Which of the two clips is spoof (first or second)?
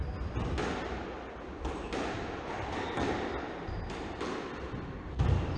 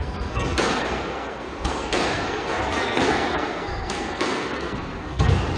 second